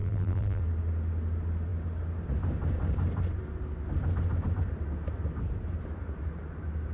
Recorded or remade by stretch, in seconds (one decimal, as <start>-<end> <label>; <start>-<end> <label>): 0.0-0.6 remade; 0.6-6.9 recorded